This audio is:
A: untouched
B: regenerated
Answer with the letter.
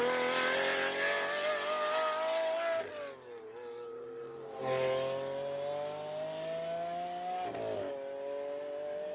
A